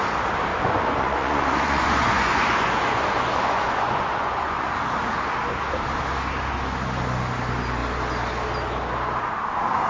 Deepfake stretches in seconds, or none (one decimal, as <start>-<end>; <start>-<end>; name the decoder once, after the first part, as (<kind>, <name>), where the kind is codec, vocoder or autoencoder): 0.5-4.8 (vocoder, Vocos)